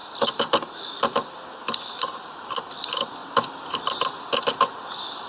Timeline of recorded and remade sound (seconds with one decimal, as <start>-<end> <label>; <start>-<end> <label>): 0.0-5.3 recorded